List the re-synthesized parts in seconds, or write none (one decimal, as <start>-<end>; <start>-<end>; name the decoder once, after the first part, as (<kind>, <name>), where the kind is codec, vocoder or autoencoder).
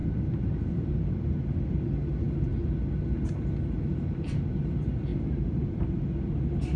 0.0-0.9 (vocoder, BigVGAN v2); 5.1-6.0